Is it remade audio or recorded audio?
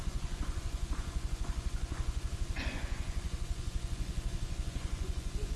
remade